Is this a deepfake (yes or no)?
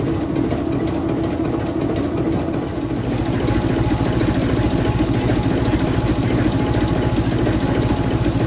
no